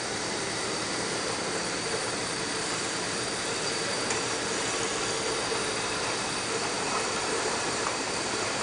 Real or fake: fake